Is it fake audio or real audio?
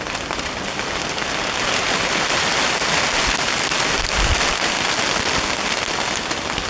real